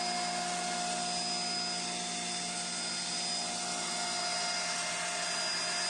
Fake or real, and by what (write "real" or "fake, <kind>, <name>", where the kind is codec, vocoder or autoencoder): real